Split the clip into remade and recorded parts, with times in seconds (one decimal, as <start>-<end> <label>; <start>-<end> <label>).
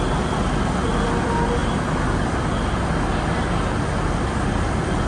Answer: 0.0-5.1 recorded